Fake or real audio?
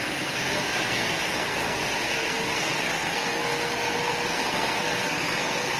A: fake